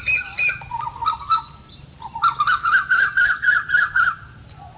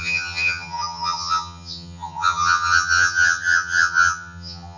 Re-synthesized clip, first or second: second